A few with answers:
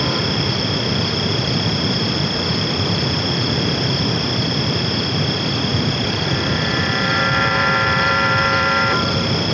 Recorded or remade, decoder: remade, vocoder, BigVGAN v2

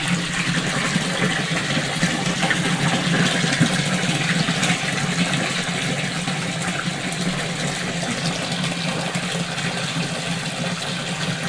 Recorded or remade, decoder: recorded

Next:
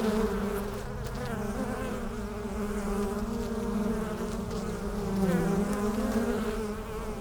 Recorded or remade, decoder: recorded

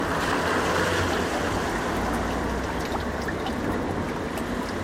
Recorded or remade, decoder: recorded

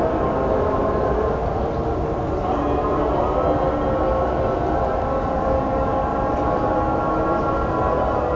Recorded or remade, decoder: recorded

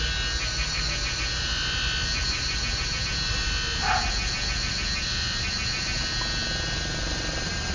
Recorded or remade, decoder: recorded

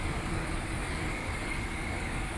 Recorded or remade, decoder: remade, codec, DAC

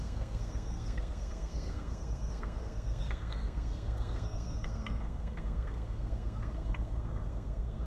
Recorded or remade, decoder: remade, codec, SNAC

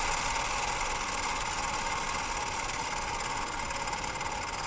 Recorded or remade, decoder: recorded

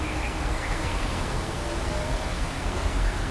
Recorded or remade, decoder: remade, codec, SNAC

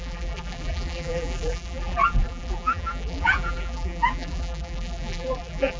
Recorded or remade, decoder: remade, vocoder, BigVGAN v2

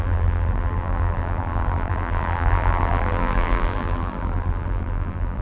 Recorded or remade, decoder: remade, vocoder, BigVGAN v2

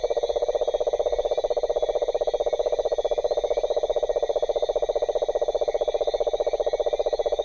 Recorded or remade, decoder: recorded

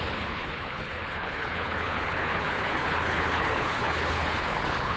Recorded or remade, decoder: remade, codec, HILCodec